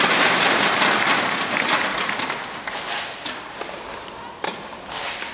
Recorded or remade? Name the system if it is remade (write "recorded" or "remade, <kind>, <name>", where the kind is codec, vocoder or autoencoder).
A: recorded